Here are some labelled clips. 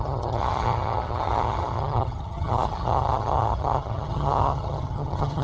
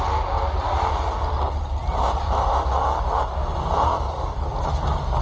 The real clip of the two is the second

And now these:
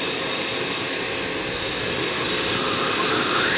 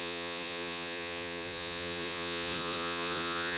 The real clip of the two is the first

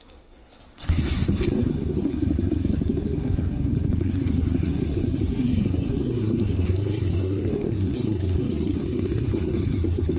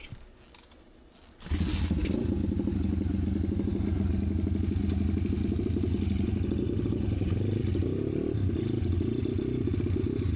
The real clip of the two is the second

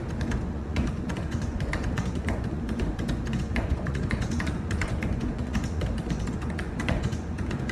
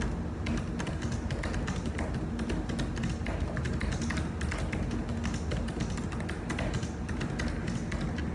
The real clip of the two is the second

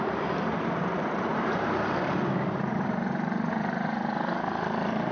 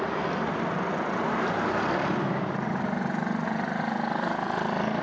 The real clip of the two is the second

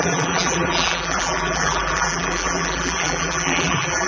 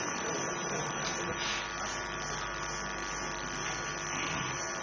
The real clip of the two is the second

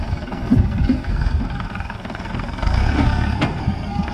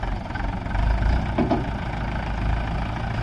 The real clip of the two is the second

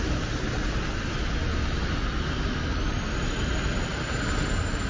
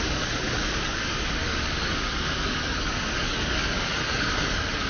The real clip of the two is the first